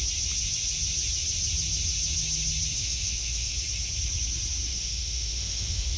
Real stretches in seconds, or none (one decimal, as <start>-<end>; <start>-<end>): 0.0-2.7; 3.5-4.7